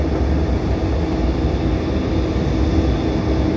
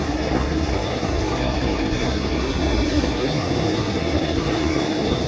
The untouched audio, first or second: first